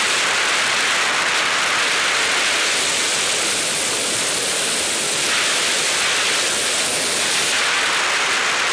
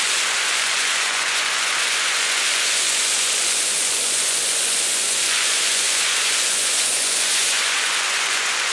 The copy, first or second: second